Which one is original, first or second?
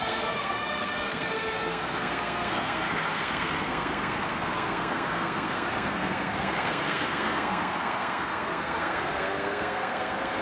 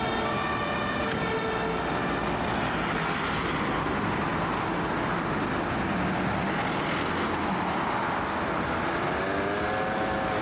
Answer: second